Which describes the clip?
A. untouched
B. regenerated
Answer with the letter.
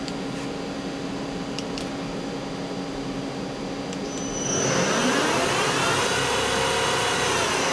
A